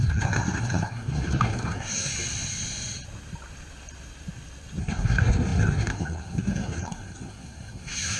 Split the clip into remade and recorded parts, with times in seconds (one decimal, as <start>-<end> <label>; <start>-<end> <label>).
0.0-2.1 remade; 2.1-4.8 recorded; 4.8-8.2 remade